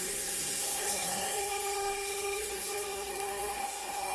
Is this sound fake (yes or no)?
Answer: yes